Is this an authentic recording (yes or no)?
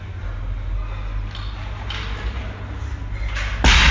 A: yes